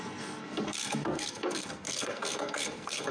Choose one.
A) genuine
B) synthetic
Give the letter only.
B